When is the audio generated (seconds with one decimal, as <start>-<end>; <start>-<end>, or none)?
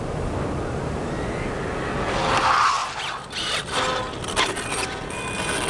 none